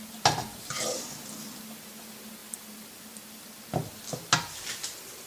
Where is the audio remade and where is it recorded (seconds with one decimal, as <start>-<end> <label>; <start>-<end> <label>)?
0.0-5.3 recorded